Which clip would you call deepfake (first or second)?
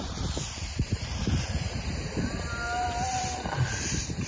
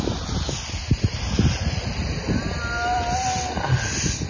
first